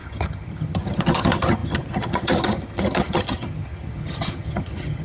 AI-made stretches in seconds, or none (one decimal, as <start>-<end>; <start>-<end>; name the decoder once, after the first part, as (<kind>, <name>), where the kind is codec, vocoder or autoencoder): 0.0-5.0 (vocoder, HiFi-GAN)